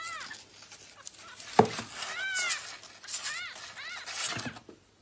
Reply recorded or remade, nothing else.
recorded